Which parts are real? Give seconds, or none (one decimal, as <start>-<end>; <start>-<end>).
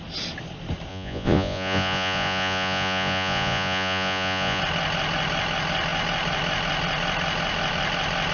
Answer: 0.0-0.9; 4.6-8.3